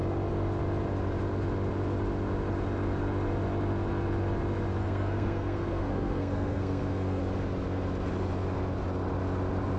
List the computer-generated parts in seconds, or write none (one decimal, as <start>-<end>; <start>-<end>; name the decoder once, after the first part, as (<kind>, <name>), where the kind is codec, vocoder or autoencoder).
4.8-7.2 (codec, SNAC)